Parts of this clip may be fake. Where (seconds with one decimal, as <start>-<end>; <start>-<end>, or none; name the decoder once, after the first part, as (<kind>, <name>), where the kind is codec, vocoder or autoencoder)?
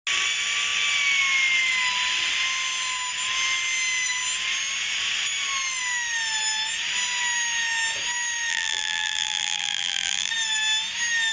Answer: 8.5-10.3 (vocoder, BigVGAN v2)